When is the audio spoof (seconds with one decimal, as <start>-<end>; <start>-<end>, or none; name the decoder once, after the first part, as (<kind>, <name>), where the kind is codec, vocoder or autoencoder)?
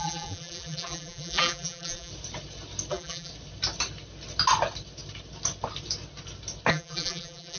0.0-2.1 (vocoder, BigVGAN v2); 2.9-3.3; 6.7-7.6